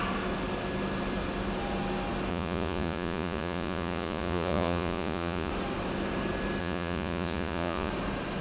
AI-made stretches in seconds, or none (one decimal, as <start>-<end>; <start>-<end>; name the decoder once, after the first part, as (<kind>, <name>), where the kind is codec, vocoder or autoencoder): 2.3-5.5 (vocoder, Vocos); 6.6-7.9